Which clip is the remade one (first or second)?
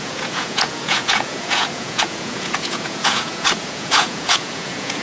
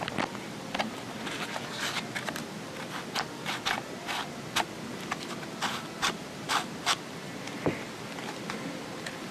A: first